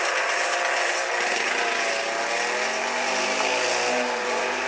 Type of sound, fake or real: real